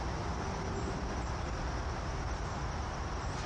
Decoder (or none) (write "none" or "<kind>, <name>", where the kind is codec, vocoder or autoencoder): none